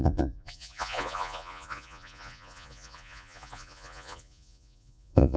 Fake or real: fake